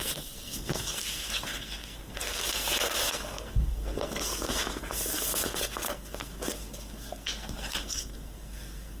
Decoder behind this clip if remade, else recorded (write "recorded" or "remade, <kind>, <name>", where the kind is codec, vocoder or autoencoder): remade, codec, SNAC